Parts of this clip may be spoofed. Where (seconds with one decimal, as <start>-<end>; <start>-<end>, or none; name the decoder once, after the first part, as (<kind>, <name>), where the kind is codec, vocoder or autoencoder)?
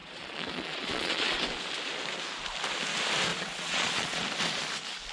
0.0-1.4 (vocoder, Vocos); 3.3-4.2